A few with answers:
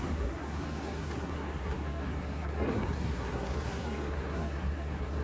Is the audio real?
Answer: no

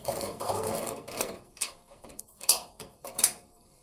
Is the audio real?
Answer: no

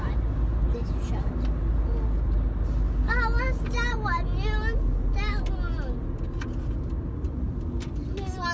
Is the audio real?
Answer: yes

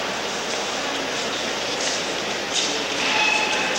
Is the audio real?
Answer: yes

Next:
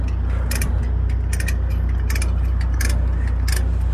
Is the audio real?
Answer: yes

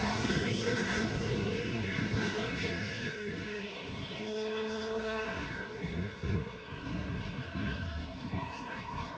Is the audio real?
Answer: no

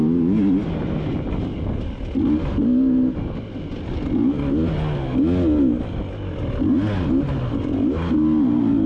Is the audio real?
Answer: yes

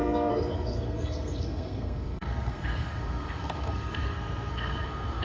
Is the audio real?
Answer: no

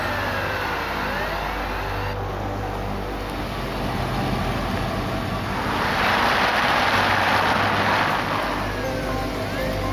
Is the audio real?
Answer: yes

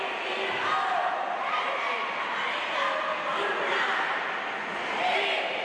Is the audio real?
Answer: yes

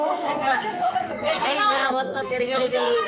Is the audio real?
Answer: no